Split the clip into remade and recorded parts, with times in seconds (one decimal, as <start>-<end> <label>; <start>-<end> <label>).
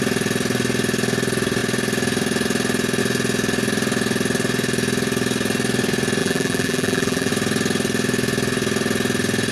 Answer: 0.0-6.2 recorded; 6.2-7.3 remade; 7.3-9.5 recorded